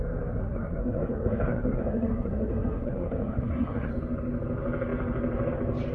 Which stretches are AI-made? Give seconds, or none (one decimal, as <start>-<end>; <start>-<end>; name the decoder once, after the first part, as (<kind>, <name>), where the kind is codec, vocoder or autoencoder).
0.4-3.9 (codec, SNAC)